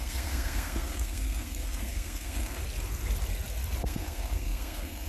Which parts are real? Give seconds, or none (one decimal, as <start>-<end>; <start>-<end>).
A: 2.6-3.8